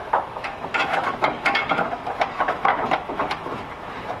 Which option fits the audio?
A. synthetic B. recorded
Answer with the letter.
A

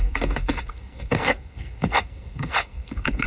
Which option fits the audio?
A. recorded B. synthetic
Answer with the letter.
B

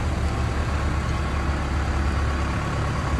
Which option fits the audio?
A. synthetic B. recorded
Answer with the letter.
B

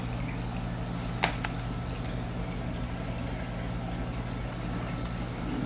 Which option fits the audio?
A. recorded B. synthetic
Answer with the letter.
A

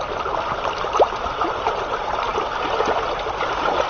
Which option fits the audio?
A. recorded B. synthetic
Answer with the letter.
A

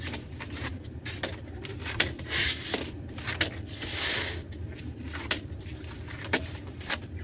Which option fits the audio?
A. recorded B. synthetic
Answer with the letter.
B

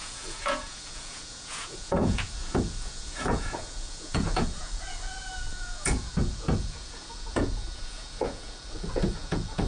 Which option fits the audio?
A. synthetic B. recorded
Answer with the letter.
A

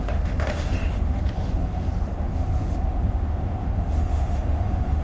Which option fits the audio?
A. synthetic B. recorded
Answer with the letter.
A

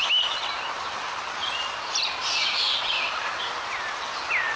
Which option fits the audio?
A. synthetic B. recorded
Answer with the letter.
B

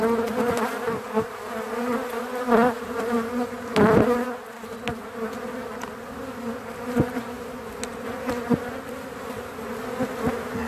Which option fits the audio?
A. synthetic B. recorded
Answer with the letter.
B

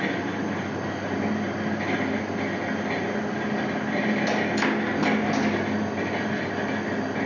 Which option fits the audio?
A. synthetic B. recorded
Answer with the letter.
B